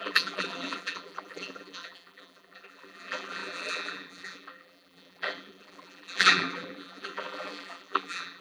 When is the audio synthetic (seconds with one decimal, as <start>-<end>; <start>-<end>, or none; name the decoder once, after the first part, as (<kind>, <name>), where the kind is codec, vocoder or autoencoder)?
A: 0.0-8.4 (vocoder, BigVGAN v2)